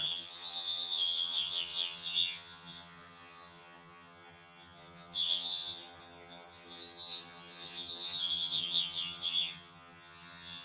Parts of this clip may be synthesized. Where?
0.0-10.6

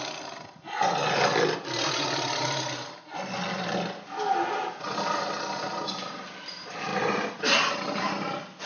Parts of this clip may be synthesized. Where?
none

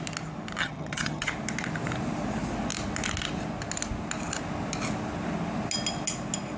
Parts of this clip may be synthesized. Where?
0.6-1.3

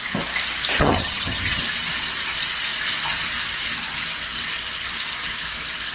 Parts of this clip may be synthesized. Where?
0.8-1.6

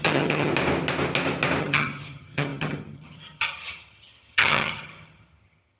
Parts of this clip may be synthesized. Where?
0.0-0.5; 1.6-5.8

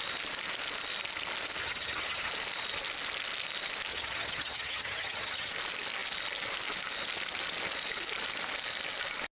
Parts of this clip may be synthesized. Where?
1.6-2.3; 3.9-5.5